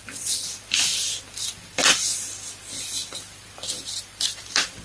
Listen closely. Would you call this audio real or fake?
fake